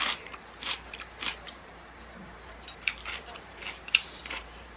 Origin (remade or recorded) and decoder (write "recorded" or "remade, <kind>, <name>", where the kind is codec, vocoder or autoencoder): remade, vocoder, BigVGAN v2